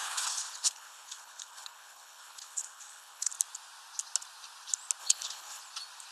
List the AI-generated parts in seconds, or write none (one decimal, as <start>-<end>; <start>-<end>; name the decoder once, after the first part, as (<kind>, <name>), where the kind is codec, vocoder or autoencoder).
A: 0.0-3.3 (codec, HILCodec); 5.0-5.6